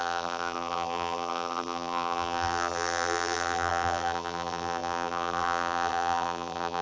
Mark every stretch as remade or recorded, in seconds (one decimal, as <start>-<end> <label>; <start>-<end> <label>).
0.0-6.8 remade